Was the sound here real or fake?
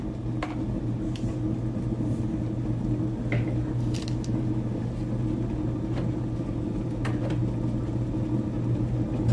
real